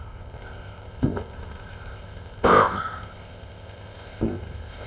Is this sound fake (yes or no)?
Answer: yes